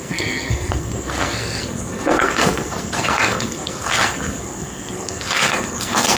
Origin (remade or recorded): remade